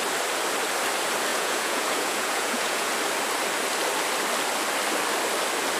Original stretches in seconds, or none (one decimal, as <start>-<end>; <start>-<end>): 0.0-1.3; 2.9-5.8